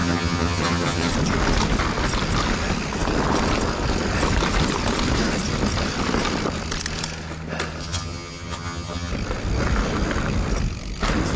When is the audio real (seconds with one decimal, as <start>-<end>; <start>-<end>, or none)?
1.1-7.8; 9.1-11.4